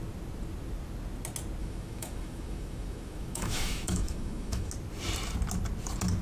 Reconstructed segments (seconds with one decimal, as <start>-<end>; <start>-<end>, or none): 1.6-4.7